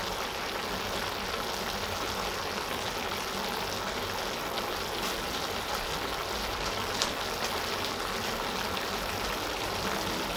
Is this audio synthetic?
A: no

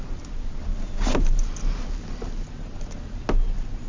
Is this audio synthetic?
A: no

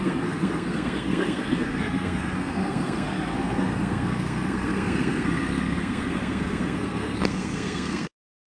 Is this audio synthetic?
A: yes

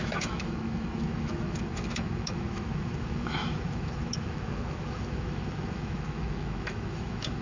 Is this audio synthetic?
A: yes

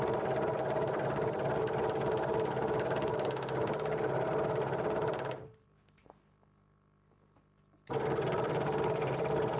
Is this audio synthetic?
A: no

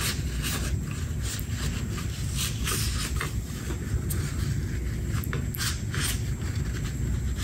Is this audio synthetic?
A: no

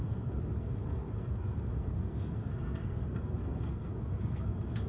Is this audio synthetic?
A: yes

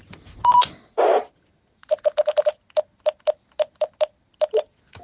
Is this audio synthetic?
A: no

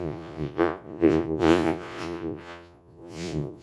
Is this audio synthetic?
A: yes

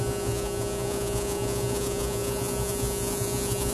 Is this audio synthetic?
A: yes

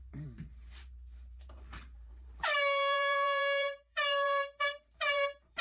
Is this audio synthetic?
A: yes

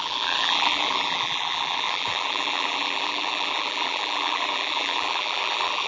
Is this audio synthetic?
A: yes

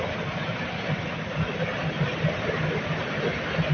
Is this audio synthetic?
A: no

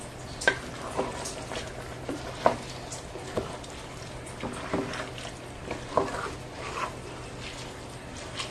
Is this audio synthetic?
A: no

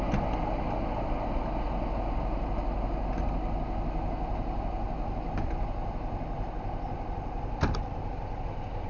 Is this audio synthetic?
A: no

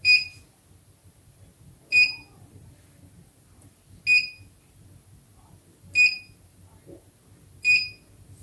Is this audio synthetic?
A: no